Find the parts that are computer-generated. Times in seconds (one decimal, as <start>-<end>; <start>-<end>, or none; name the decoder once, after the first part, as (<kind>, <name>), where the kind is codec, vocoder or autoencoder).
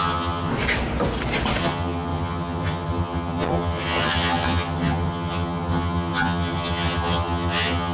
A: 0.0-0.5 (vocoder, HiFi-GAN); 1.6-7.9